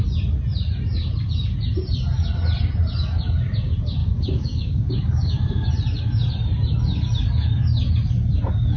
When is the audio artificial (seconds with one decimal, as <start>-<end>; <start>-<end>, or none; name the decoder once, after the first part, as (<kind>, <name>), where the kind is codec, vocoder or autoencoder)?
4.0-5.7 (codec, DAC)